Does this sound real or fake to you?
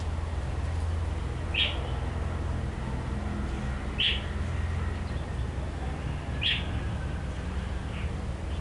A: real